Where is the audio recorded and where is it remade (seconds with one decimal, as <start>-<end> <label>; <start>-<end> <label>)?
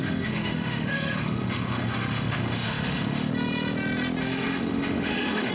0.0-3.3 remade; 3.3-4.2 recorded; 4.2-5.5 remade